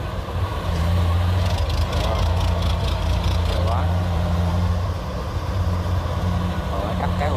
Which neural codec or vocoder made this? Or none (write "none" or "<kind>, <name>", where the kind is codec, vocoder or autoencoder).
vocoder, BigVGAN v2